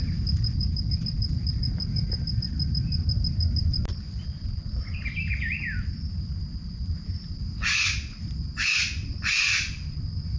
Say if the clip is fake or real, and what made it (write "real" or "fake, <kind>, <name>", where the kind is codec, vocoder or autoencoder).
real